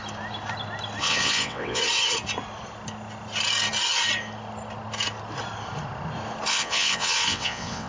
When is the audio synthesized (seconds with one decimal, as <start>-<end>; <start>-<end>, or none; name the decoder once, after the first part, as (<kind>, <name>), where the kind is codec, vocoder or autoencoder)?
1.0-1.8 (vocoder, WaveNeXt); 6.5-7.9